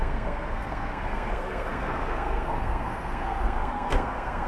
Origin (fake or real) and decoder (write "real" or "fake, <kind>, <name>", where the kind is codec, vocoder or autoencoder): fake, codec, SNAC